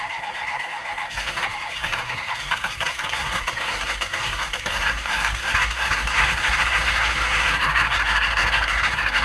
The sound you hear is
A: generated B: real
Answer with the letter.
A